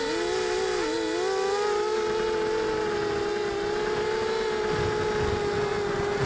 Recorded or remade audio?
recorded